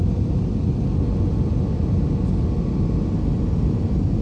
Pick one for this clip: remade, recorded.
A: recorded